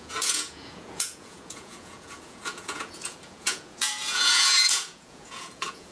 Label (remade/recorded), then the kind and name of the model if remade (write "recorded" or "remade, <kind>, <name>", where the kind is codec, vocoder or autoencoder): remade, vocoder, Vocos